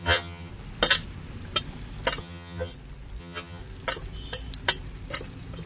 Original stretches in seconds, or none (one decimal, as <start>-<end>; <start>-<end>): 0.5-2.2; 2.7-3.2; 3.6-5.7